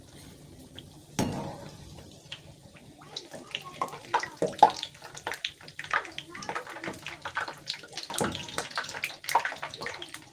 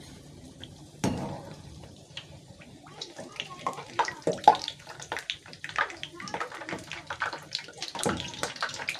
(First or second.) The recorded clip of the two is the first